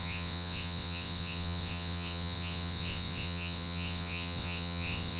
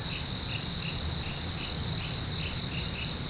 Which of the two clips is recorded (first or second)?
second